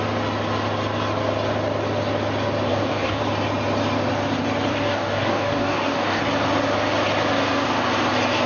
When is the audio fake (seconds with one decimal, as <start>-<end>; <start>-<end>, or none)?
2.7-3.2; 4.7-6.2